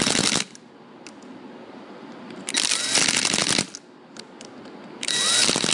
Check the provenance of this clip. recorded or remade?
recorded